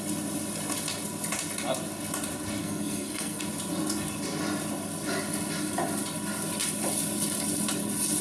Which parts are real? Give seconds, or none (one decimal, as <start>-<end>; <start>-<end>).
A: 0.0-2.6; 3.4-8.2

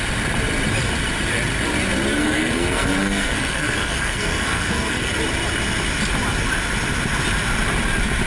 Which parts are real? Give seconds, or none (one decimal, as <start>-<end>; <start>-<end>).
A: 0.0-2.2; 5.1-8.3

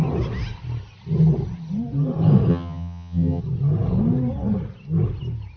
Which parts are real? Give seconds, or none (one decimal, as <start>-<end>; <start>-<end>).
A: 0.0-2.5; 3.4-5.6

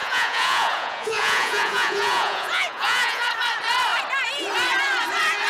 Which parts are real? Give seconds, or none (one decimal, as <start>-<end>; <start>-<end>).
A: 3.3-5.5